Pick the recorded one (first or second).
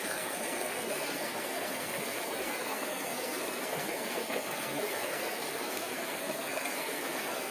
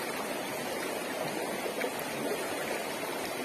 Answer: second